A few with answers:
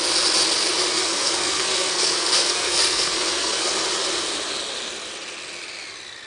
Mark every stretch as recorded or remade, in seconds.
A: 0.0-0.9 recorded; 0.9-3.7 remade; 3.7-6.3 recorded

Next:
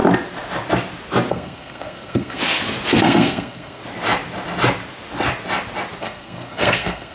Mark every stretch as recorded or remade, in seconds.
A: 0.0-1.3 recorded; 1.3-2.4 remade; 2.4-3.0 recorded; 3.0-3.8 remade; 3.8-6.0 recorded; 6.0-7.1 remade

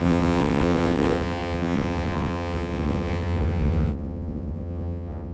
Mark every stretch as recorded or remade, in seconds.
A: 0.0-5.3 remade

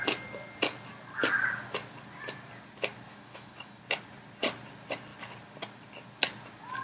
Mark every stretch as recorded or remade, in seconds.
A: 0.0-3.1 recorded; 3.1-3.8 remade; 3.8-6.8 recorded

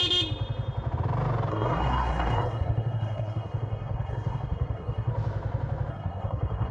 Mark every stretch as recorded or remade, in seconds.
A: 0.0-1.5 recorded; 1.5-5.1 remade; 5.1-5.9 recorded; 5.9-6.7 remade

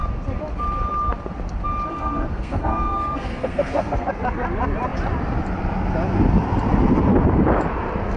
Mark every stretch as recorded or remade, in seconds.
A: 0.0-1.9 recorded; 1.9-4.1 remade; 4.1-8.2 recorded

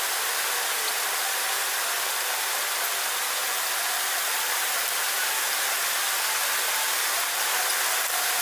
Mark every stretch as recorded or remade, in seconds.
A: 0.0-3.4 recorded; 3.4-5.0 remade; 5.0-8.4 recorded

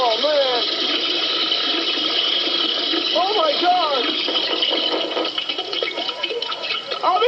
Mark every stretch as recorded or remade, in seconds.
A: 0.0-5.5 recorded; 5.5-6.8 remade; 6.8-7.3 recorded